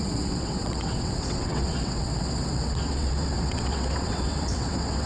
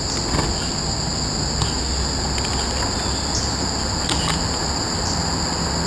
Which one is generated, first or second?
first